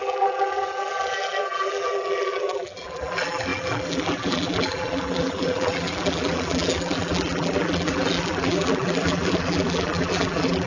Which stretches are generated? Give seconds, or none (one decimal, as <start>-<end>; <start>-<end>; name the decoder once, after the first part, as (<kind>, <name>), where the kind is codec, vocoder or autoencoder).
0.0-10.7 (vocoder, BigVGAN v2)